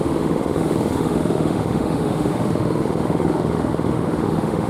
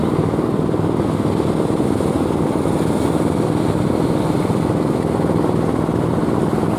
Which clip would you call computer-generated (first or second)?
first